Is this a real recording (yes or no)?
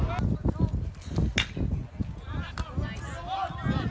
yes